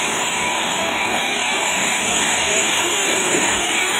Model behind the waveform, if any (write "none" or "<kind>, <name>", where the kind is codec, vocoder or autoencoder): codec, DAC